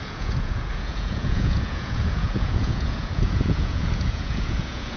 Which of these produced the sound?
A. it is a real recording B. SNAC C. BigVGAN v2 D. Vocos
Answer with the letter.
D